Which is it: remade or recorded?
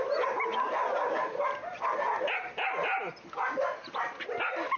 recorded